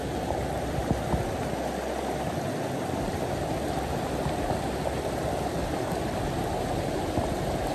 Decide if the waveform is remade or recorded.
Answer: recorded